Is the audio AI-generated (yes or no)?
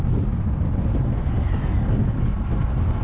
no